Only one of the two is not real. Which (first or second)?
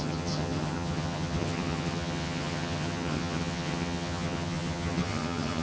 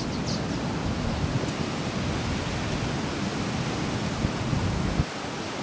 first